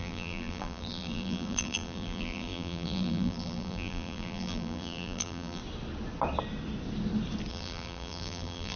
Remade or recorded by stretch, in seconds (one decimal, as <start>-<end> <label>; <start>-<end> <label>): 0.0-5.6 remade; 5.6-7.5 recorded; 7.5-8.8 remade